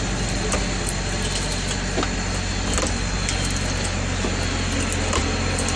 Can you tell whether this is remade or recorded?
recorded